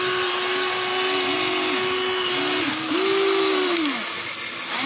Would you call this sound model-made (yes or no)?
no